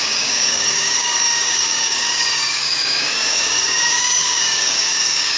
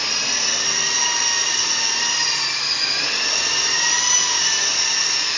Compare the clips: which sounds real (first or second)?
second